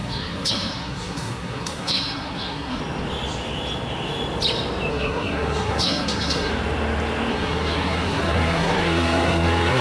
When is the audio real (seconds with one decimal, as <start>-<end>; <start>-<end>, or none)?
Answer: 2.8-4.9; 6.5-7.3